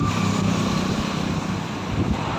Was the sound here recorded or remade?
remade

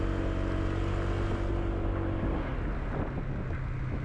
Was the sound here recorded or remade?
recorded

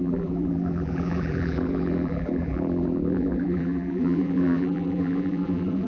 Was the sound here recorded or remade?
remade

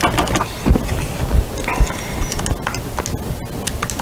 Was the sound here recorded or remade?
recorded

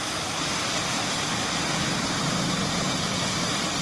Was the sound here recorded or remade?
recorded